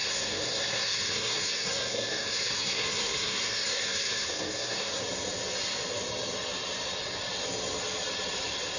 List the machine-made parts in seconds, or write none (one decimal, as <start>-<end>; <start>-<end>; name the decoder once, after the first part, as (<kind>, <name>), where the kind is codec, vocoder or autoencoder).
0.0-5.0 (codec, SNAC)